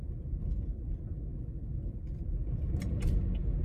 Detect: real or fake real